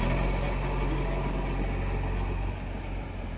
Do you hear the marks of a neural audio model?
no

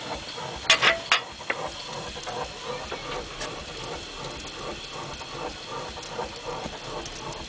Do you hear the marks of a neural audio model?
no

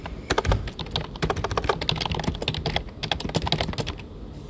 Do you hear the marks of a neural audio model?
no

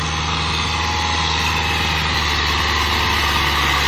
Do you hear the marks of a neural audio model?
no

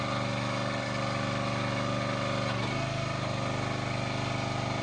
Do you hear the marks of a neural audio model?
no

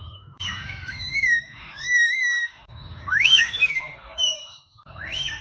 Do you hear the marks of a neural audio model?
yes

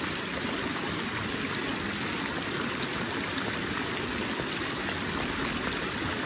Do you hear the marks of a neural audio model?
no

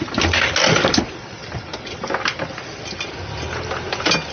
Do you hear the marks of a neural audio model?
no